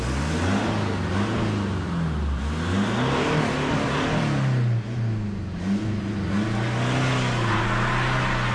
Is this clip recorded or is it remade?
recorded